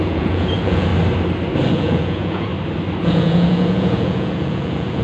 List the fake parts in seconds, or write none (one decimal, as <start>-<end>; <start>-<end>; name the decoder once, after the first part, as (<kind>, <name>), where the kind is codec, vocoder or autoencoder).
0.0-0.9 (vocoder, Vocos); 1.7-2.5; 3.0-5.0